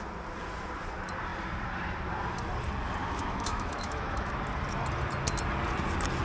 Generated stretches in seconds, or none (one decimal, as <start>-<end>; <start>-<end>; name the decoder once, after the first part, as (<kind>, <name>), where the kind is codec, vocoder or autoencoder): 3.0-4.3 (autoencoder, DAC-VAE)